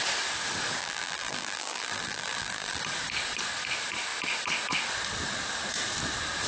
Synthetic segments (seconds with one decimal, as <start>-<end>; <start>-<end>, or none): 0.8-2.8